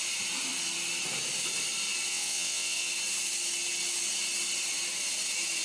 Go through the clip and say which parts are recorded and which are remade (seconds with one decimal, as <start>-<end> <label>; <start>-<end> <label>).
0.0-2.1 recorded; 2.1-2.9 remade; 2.9-5.6 recorded